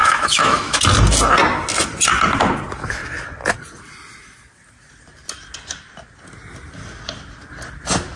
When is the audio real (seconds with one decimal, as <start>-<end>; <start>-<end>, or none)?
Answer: 0.8-8.2